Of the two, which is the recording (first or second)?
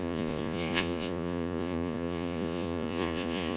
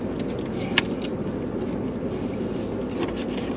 second